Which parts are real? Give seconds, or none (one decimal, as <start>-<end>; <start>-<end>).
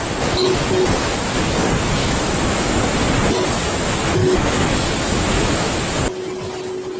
0.0-2.0; 2.9-4.2; 6.0-7.0